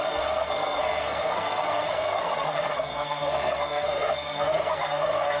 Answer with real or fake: fake